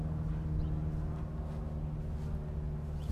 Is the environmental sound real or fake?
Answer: real